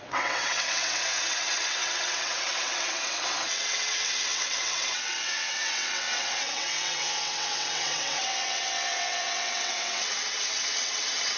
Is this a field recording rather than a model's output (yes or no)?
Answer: no